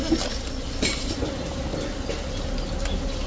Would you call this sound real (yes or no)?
yes